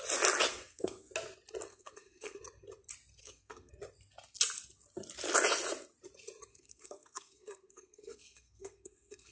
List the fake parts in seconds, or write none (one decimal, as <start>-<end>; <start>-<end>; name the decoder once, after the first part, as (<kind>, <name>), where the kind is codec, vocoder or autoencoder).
0.5-1.1 (codec, SNAC); 1.7-2.4; 3.2-3.7; 6.5-9.3